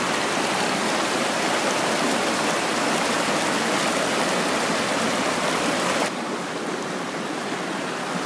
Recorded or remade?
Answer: recorded